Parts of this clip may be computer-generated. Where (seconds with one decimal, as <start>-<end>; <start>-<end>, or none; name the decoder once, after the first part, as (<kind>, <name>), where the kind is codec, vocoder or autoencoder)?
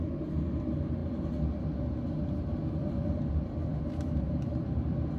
2.8-3.3 (vocoder, BigVGAN v2); 3.7-5.2